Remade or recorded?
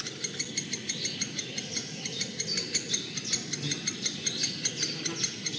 recorded